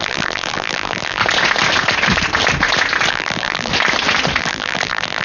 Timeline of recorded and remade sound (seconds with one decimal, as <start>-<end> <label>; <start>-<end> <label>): 0.0-1.2 remade; 1.2-3.1 recorded; 3.1-3.7 remade; 3.7-4.4 recorded; 4.4-5.2 remade